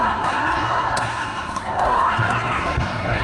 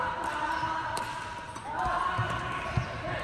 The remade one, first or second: first